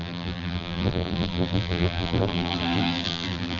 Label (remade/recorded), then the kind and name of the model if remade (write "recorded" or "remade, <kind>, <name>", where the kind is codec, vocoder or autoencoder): remade, vocoder, BigVGAN v2